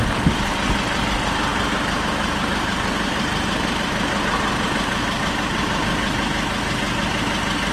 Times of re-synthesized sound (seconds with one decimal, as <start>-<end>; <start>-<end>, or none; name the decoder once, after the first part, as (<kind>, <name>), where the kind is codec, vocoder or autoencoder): 1.5-5.2 (vocoder, BigVGAN v2)